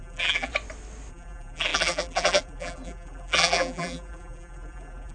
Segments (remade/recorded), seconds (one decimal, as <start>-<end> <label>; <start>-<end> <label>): 0.0-0.5 remade; 0.5-1.1 recorded; 1.1-5.1 remade